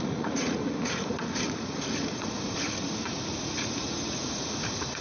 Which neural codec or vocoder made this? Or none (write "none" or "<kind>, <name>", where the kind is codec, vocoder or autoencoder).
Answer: vocoder, Vocos